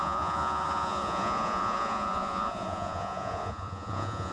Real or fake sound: fake